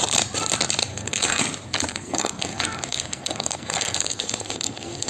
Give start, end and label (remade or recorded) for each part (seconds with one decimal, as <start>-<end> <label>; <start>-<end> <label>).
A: 0.0-0.9 recorded; 0.9-1.4 remade; 1.4-1.9 recorded; 1.9-5.1 remade